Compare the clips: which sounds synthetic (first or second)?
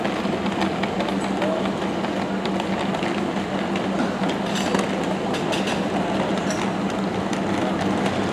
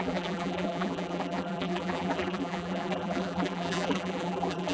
second